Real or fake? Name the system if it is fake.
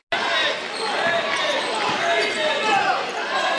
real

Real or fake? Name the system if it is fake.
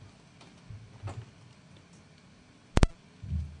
real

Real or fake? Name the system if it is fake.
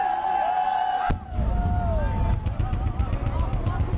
real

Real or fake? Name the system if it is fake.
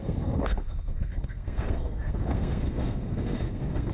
fake, codec, SNAC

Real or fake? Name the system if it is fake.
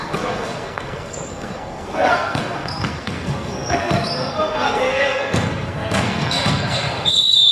fake, codec, SNAC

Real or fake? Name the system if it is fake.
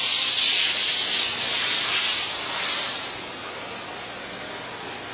real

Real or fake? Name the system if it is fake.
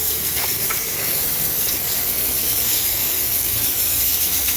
fake, codec, SNAC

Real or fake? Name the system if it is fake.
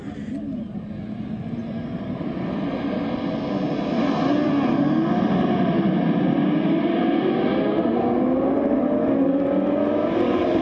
real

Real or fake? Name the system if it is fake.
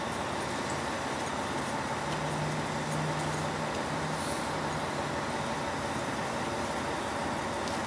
real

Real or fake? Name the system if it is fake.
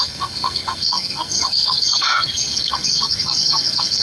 fake, codec, SNAC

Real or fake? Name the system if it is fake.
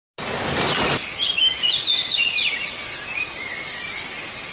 real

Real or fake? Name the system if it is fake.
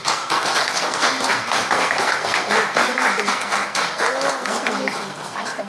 fake, codec, SNAC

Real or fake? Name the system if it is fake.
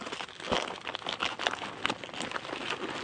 real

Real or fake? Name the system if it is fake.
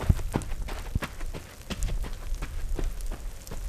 real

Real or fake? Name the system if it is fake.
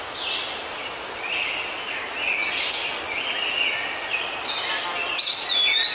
real